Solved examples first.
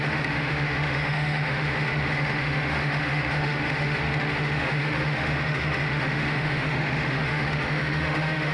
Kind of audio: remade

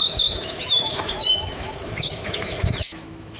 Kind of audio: remade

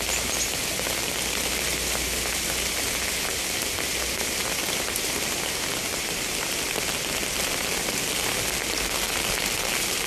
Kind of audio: recorded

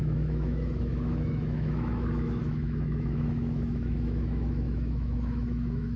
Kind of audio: remade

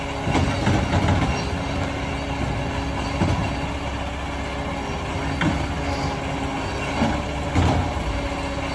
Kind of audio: recorded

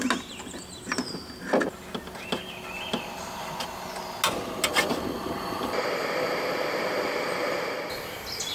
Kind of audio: recorded